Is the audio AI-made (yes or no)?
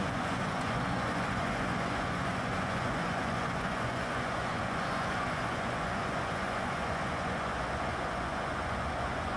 yes